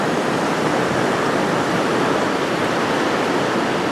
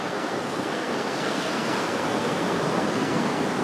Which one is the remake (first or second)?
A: second